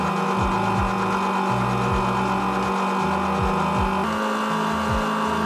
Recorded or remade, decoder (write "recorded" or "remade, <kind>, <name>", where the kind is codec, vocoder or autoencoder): recorded